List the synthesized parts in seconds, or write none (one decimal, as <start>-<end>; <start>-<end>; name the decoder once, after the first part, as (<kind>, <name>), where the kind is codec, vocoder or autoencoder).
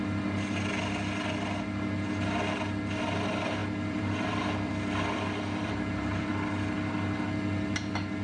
3.6-6.3 (vocoder, BigVGAN v2)